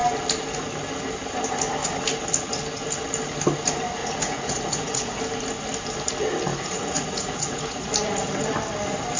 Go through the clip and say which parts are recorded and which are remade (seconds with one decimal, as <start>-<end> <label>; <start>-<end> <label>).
0.0-4.0 recorded; 4.0-5.2 remade; 5.2-6.5 recorded; 6.5-7.9 remade; 7.9-9.2 recorded